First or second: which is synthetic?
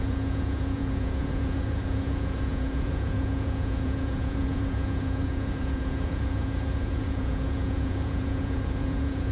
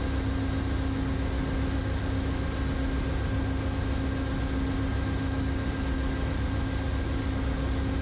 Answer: first